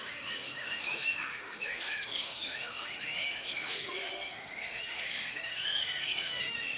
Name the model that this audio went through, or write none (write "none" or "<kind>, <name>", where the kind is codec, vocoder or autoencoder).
autoencoder, DAC-VAE